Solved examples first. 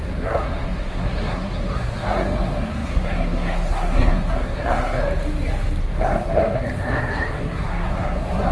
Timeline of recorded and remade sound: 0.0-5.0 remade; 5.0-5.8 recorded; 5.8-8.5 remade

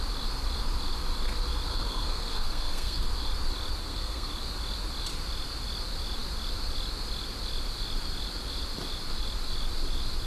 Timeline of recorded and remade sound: 0.0-1.7 recorded; 1.7-3.1 remade; 3.1-3.8 recorded; 3.8-4.3 remade; 4.3-10.3 recorded

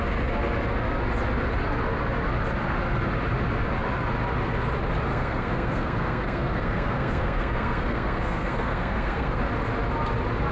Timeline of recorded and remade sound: 0.0-5.1 recorded; 5.1-9.4 remade; 9.4-10.5 recorded

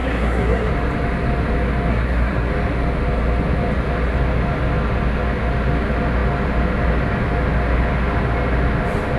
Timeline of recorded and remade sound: 0.0-0.7 remade; 0.7-1.9 recorded; 1.9-2.5 remade; 2.5-9.2 recorded

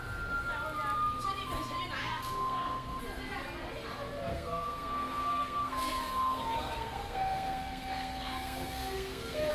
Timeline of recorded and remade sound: 0.0-2.0 recorded; 2.0-3.0 remade; 3.0-4.3 recorded; 4.3-9.5 remade

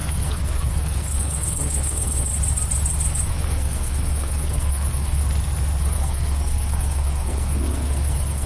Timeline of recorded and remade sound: 0.0-2.3 remade; 2.3-3.3 recorded; 3.3-5.2 remade; 5.2-5.8 recorded; 5.8-8.5 remade

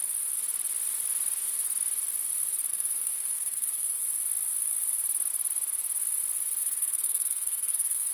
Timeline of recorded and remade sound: 0.0-2.7 recorded; 2.7-4.0 remade; 4.0-6.6 recorded; 6.6-8.1 remade